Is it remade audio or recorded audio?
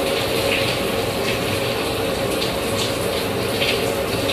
recorded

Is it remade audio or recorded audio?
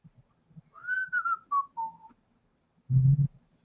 recorded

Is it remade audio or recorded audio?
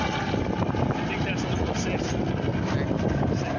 recorded